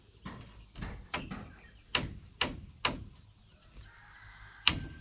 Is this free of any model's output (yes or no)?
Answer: yes